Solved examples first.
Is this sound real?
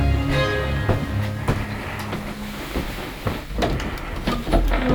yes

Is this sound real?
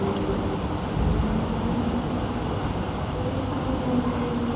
yes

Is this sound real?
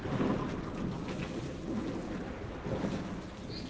yes